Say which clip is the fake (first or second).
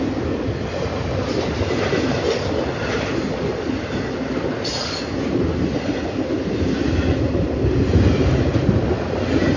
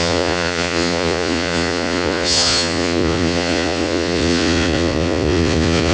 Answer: second